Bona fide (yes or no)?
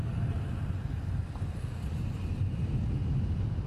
yes